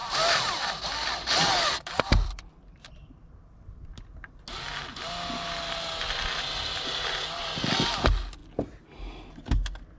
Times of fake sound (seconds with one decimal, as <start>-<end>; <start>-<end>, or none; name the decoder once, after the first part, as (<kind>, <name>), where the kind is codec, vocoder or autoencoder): 0.0-2.9 (vocoder, BigVGAN v2)